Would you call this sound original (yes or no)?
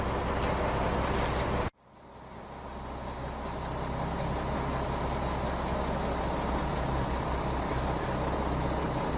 yes